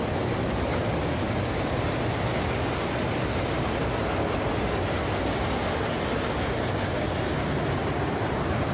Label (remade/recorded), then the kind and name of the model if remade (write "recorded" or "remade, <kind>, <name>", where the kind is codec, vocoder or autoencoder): recorded